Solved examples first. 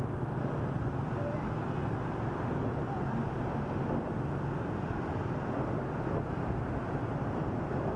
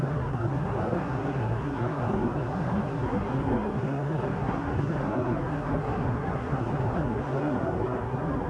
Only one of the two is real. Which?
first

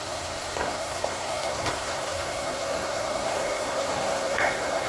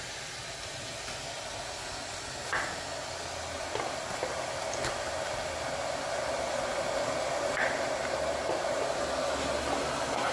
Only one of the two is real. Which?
second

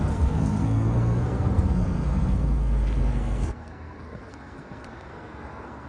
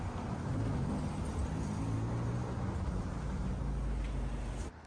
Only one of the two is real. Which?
second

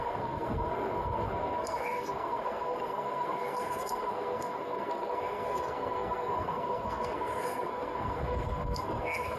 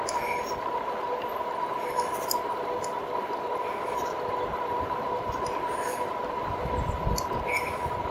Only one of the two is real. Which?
second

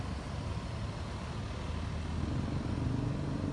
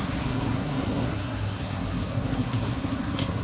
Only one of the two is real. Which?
first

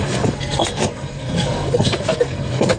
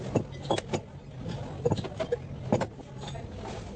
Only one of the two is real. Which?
second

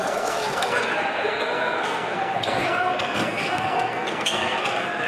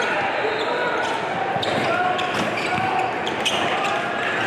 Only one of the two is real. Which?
second